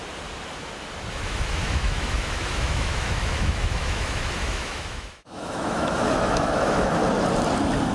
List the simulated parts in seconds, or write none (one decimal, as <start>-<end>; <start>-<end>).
1.1-7.0